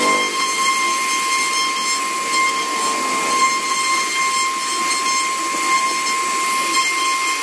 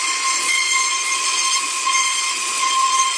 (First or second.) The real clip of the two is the first